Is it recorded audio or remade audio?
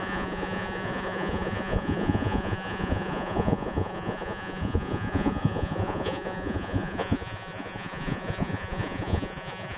remade